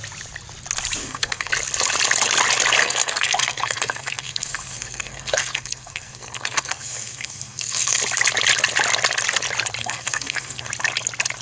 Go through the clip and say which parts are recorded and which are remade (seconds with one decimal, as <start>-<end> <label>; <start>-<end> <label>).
0.0-1.0 recorded; 1.0-1.5 remade; 1.5-2.8 recorded; 2.8-8.0 remade; 8.0-9.8 recorded; 9.8-10.7 remade; 10.7-11.4 recorded